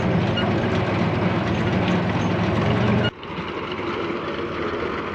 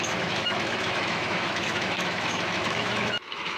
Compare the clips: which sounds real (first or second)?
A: first